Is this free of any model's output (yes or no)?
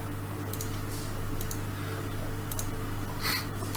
yes